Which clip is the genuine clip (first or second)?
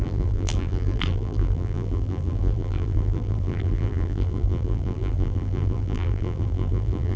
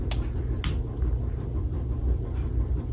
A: second